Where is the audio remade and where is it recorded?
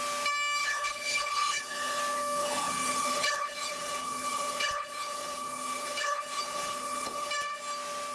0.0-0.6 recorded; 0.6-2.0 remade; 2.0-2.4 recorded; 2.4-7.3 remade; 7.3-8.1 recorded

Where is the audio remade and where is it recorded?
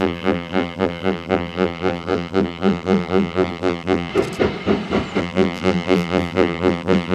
0.0-4.1 remade; 4.1-5.2 recorded; 5.2-7.1 remade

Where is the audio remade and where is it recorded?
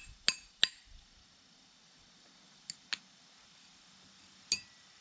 0.0-5.0 recorded